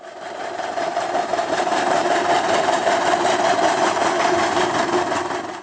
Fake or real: fake